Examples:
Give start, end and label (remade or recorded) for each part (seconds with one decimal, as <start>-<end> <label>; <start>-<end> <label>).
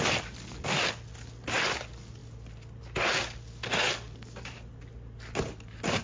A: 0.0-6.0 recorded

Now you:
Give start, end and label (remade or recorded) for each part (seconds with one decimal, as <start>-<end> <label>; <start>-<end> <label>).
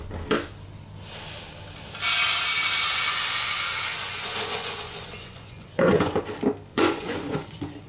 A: 0.0-2.9 recorded; 2.9-6.2 remade; 6.2-6.7 recorded; 6.7-7.9 remade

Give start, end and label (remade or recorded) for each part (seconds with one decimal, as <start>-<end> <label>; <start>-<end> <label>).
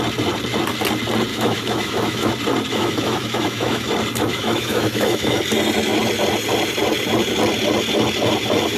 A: 0.0-1.3 recorded; 1.3-2.3 remade; 2.3-2.7 recorded; 2.7-3.9 remade; 3.9-4.3 recorded; 4.3-5.4 remade; 5.4-8.8 recorded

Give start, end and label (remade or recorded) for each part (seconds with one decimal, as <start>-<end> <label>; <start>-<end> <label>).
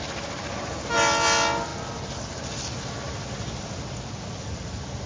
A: 0.0-5.1 recorded